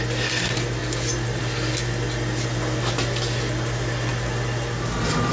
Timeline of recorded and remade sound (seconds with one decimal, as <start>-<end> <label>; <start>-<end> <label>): 0.0-5.3 recorded